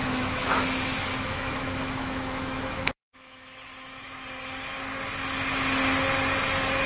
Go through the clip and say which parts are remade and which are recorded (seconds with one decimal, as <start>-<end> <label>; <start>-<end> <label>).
0.0-4.1 remade; 4.1-6.9 recorded